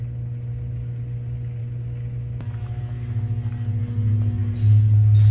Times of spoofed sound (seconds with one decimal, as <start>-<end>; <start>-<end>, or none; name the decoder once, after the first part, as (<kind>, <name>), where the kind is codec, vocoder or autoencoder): none